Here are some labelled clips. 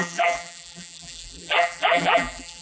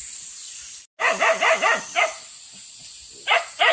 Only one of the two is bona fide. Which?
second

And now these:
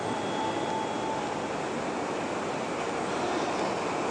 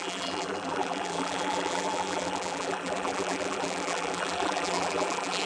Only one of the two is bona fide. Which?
first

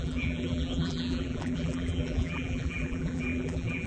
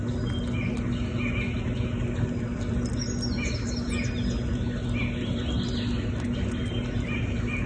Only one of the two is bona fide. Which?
second